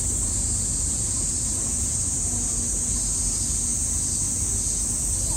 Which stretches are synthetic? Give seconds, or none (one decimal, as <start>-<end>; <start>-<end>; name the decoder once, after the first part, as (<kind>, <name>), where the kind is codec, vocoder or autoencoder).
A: 0.0-3.7 (vocoder, BigVGAN v2)